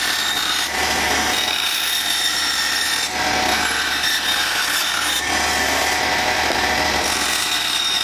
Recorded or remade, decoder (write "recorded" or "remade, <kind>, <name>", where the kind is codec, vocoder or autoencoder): recorded